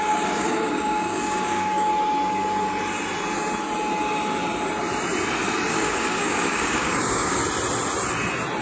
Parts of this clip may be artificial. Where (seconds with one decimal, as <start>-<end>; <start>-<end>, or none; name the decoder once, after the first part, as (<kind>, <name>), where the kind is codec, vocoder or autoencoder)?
0.0-1.9 (codec, DAC); 5.7-7.4